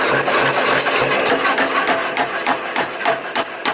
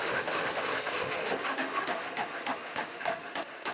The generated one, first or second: second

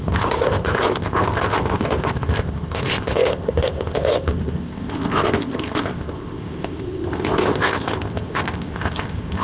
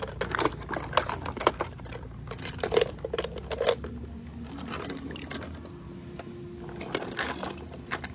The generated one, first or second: first